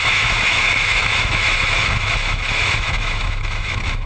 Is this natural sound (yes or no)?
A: no